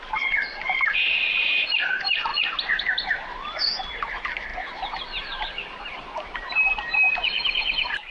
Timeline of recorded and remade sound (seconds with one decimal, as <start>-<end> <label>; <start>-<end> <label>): 0.0-2.3 remade; 2.3-2.8 recorded; 2.8-4.5 remade; 4.5-5.0 recorded; 5.0-8.1 remade